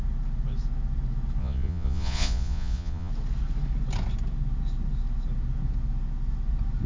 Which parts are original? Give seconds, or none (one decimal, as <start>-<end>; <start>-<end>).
0.0-1.4; 3.1-6.9